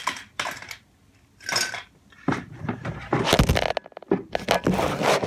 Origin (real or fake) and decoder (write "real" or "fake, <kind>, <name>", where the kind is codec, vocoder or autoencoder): real